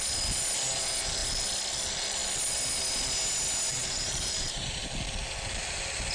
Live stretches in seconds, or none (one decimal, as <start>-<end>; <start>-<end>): 0.0-3.7; 4.8-6.1